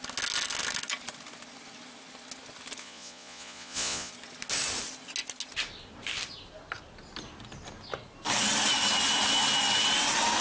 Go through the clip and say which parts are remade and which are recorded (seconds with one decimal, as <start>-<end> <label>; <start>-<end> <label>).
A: 0.0-2.8 recorded; 2.8-4.1 remade; 4.1-10.4 recorded